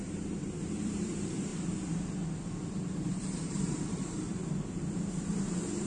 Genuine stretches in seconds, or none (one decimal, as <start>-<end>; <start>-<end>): 1.5-2.7; 4.4-5.1